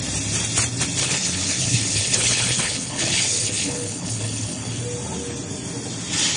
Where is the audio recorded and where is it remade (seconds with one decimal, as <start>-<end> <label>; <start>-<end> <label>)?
0.0-1.0 recorded; 1.0-4.8 remade; 4.8-6.4 recorded